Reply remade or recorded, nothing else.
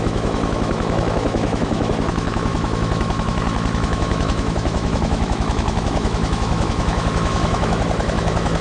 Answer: remade